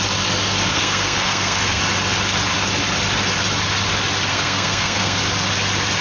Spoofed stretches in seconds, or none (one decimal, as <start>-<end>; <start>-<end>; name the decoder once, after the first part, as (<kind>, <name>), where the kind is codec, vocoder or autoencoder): 0.7-1.8 (codec, SNAC); 4.3-5.2